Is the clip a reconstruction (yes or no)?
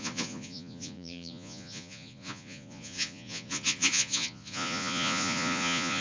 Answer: yes